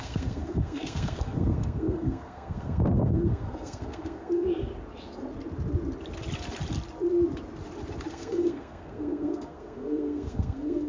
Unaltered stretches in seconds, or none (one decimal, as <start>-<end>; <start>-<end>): 4.7-8.1